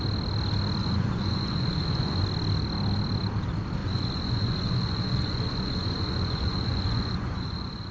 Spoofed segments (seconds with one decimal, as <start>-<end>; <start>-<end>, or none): 0.8-2.2; 3.8-7.9